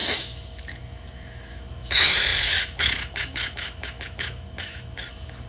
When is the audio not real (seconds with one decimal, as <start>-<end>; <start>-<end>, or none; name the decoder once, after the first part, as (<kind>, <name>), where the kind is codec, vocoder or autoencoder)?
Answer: 0.0-5.5 (autoencoder, DAC-VAE)